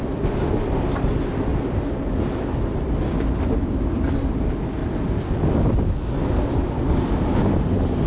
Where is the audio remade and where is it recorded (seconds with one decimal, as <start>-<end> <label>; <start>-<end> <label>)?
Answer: 0.0-8.1 recorded